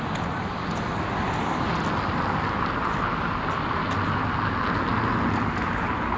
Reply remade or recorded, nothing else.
recorded